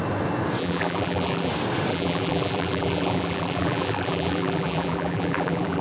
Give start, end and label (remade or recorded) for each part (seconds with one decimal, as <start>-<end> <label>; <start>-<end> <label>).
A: 0.0-0.6 recorded; 0.6-1.5 remade; 1.5-1.9 recorded; 1.9-5.8 remade